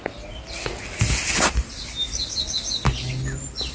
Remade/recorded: recorded